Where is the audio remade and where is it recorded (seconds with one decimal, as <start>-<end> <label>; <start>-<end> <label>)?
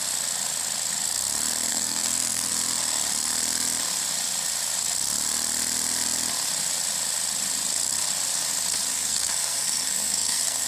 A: 0.0-1.7 recorded; 1.7-2.5 remade; 2.5-8.9 recorded; 8.9-10.7 remade